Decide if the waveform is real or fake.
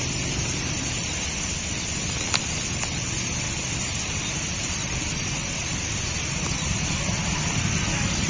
fake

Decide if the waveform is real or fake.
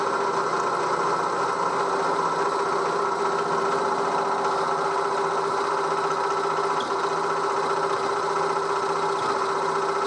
real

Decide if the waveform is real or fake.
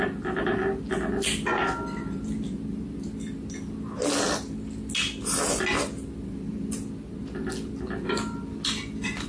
real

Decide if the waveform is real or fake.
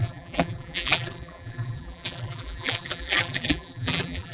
fake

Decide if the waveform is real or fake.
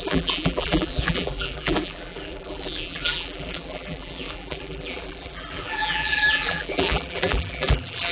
fake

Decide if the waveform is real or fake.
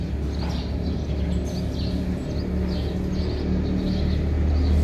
real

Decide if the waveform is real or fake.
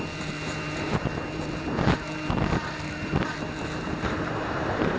fake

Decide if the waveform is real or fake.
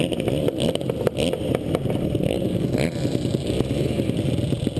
real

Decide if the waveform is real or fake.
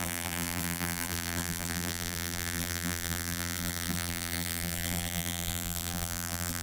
fake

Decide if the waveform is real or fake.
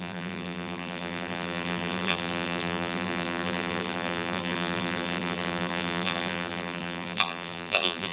fake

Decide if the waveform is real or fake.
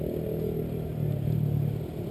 real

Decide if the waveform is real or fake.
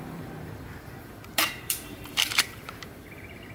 fake